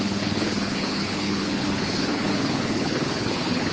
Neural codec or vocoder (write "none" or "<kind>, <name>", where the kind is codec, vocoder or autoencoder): codec, HILCodec